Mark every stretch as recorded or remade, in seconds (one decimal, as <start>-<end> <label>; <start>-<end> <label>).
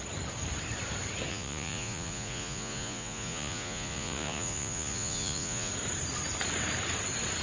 0.0-1.3 recorded; 1.3-5.7 remade; 5.7-7.4 recorded